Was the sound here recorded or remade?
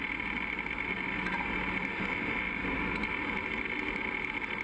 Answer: recorded